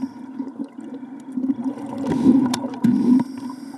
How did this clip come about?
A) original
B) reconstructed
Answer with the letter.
B